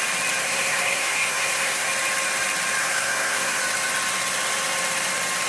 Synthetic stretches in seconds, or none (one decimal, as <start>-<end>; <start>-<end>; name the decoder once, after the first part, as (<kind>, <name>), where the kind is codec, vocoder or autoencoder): 0.4-1.9 (codec, SNAC); 2.8-3.6